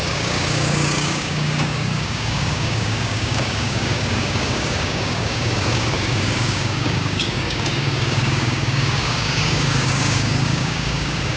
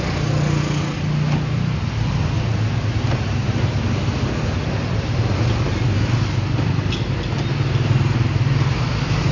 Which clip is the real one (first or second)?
second